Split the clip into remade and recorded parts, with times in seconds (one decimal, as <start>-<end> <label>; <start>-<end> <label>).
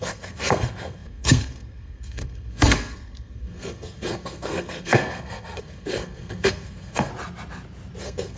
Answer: 0.0-7.1 remade; 7.1-8.0 recorded; 8.0-8.4 remade